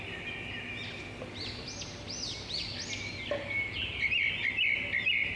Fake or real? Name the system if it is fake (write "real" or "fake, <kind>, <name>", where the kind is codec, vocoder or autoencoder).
real